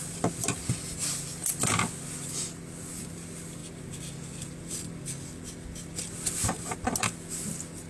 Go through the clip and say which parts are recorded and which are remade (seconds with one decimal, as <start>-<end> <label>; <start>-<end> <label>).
0.0-7.9 recorded